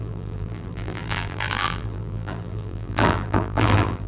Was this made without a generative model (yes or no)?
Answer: no